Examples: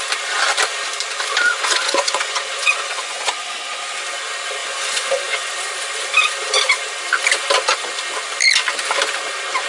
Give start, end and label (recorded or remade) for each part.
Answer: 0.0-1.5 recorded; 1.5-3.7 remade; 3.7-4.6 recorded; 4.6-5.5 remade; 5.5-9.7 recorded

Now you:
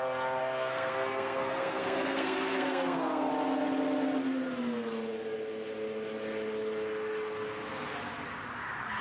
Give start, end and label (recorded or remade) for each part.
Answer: 0.0-0.4 recorded; 0.4-3.3 remade; 3.3-9.0 recorded

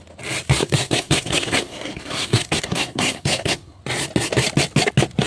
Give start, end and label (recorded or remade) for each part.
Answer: 0.0-0.6 recorded; 0.6-3.8 remade; 3.8-5.3 recorded

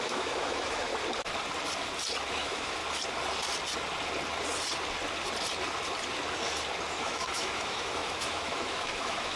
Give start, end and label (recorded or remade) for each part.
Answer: 0.0-0.9 remade; 0.9-2.3 recorded; 2.3-2.8 remade; 2.8-7.0 recorded; 7.0-9.4 remade

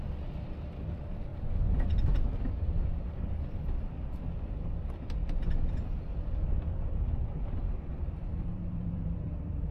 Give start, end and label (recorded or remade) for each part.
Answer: 0.0-1.3 recorded; 1.3-3.6 remade; 3.6-7.3 recorded; 7.3-9.7 remade

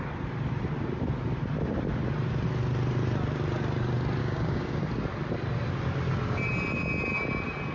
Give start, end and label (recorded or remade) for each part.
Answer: 0.0-4.2 recorded; 4.2-4.8 remade; 4.8-7.7 recorded

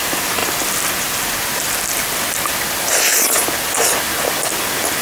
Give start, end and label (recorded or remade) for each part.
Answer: 0.0-5.0 recorded